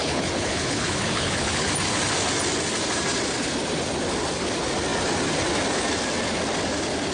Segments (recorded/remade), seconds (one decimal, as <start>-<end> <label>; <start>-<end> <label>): 0.0-1.7 remade; 1.7-7.1 recorded